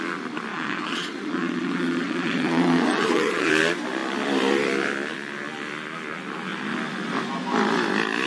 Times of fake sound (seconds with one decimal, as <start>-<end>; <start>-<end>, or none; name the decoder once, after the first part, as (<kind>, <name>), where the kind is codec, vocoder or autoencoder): 0.5-3.5 (vocoder, Vocos)